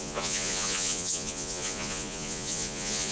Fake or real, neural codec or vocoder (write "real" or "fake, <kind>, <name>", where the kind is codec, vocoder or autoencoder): fake, vocoder, Vocos